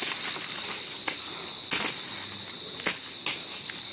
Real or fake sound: real